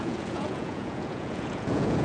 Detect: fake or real fake